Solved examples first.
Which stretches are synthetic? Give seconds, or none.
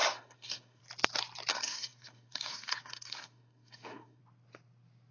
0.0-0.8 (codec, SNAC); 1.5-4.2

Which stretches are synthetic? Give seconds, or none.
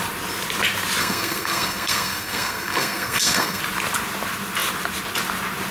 1.0-3.6 (codec, SNAC)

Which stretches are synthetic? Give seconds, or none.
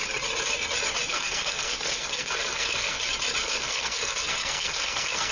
1.1-3.0 (codec, SNAC); 3.4-5.3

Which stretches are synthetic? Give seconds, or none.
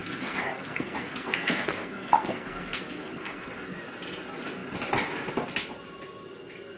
0.0-3.5 (codec, SNAC)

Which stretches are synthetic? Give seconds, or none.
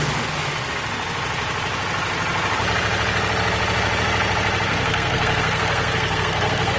4.7-6.8 (codec, SNAC)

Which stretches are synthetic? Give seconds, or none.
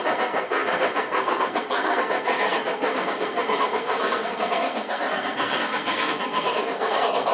0.0-7.3 (codec, SNAC)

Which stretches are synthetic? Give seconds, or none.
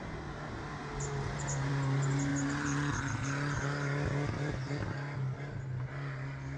none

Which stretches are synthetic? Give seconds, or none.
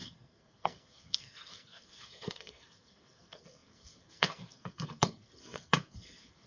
0.0-6.5 (codec, SNAC)